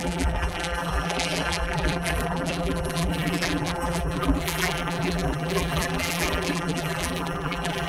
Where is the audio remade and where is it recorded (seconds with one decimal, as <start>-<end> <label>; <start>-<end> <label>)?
0.0-7.9 remade